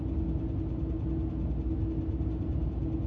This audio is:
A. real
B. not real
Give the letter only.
A